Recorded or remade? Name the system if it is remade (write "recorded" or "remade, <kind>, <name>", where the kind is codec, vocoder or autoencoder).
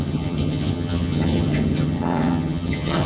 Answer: remade, vocoder, HiFi-GAN